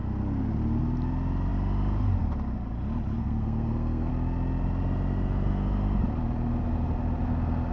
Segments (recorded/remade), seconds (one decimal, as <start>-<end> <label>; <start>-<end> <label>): 0.0-3.2 recorded; 3.2-4.1 remade; 4.1-7.7 recorded